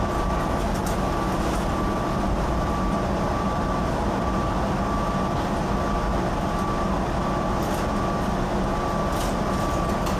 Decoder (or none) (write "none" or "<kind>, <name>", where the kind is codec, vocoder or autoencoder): none